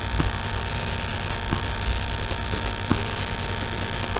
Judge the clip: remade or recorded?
recorded